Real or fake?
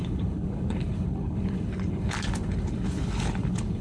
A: fake